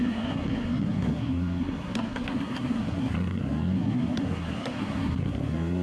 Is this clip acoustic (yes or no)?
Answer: no